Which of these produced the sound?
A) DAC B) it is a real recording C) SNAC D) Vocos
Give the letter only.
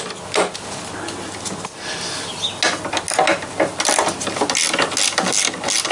B